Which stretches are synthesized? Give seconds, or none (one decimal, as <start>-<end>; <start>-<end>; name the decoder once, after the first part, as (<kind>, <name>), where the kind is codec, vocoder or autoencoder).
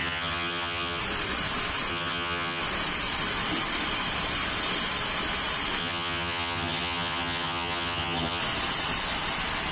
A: 0.0-1.0 (vocoder, HiFi-GAN); 1.9-2.6; 5.8-8.4